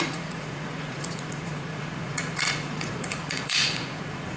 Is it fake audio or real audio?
fake